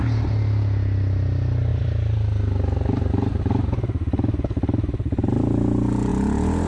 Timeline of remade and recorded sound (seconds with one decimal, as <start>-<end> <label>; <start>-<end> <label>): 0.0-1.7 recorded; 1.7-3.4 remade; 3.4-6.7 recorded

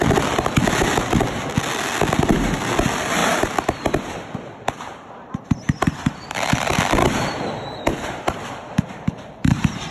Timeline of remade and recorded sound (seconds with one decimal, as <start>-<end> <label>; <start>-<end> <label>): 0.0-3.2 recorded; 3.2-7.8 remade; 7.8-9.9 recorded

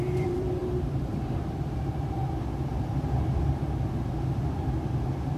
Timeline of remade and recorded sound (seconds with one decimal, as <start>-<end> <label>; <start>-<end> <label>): 0.0-2.7 remade; 2.7-5.4 recorded

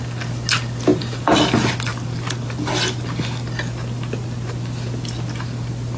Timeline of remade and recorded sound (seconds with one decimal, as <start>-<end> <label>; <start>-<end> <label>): 0.0-0.9 recorded; 0.9-1.5 remade; 1.5-6.0 recorded

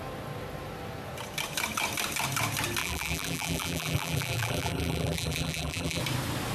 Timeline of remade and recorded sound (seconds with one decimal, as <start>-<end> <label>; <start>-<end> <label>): 0.0-2.8 recorded; 2.8-6.0 remade; 6.0-6.5 recorded

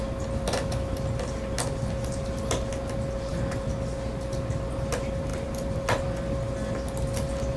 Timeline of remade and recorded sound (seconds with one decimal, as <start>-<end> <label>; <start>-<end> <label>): 0.0-5.3 recorded; 5.3-6.0 remade; 6.0-7.6 recorded